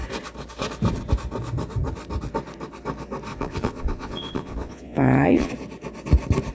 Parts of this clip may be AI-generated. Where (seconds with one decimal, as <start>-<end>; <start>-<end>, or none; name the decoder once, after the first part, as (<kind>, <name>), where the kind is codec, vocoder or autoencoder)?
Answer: 3.3-5.5 (vocoder, Vocos)